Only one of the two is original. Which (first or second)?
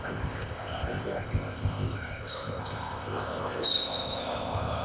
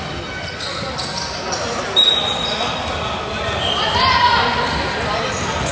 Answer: second